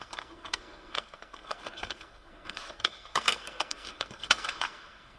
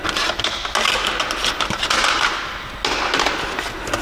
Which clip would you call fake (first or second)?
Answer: first